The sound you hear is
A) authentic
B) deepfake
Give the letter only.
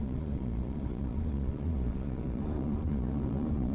B